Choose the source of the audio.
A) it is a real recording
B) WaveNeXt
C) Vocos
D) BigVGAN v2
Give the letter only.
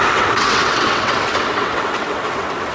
B